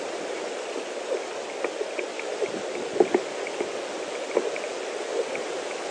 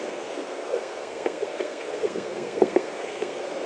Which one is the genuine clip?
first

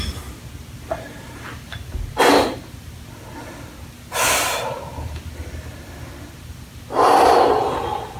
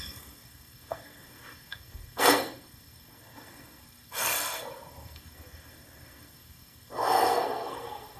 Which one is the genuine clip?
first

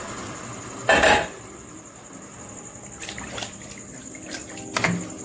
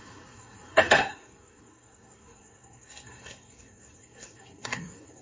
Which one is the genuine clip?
first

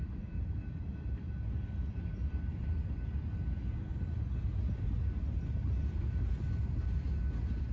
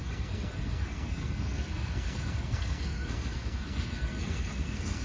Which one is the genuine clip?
first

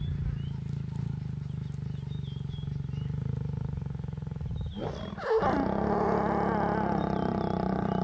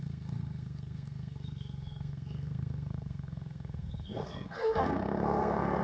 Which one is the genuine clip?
first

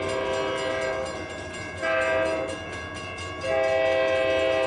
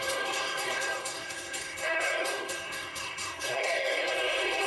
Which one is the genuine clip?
first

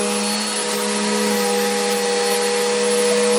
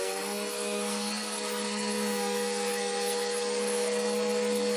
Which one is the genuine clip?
first